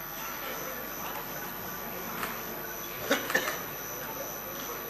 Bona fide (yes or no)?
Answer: yes